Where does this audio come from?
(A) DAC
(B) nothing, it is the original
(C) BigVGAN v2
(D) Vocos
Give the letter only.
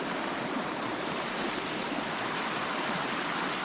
B